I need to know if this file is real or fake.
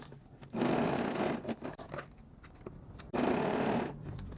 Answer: fake